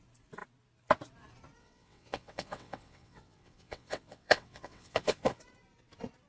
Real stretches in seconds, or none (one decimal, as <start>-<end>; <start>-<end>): 0.0-1.6; 5.4-6.3